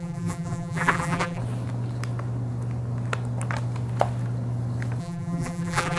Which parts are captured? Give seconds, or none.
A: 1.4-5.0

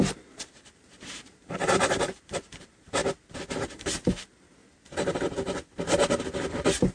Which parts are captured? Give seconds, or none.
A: 3.0-3.6; 4.6-6.5

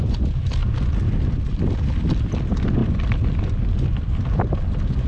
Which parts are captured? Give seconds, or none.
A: 0.6-1.5